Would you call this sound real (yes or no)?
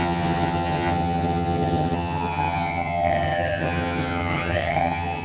no